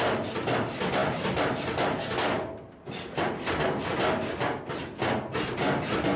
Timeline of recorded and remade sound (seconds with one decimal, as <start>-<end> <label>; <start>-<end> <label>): 0.0-6.2 recorded